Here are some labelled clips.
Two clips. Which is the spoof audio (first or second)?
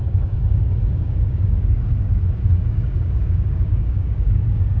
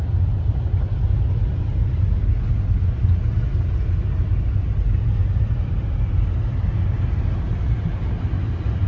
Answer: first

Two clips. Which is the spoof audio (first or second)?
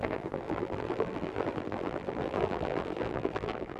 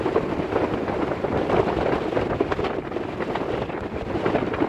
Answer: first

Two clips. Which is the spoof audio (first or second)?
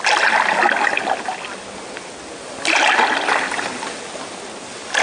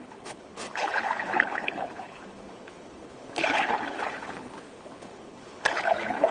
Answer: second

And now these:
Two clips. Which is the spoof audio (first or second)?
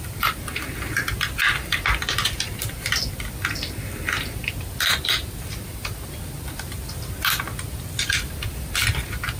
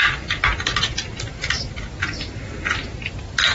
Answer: first